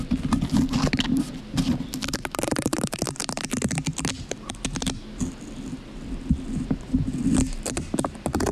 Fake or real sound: real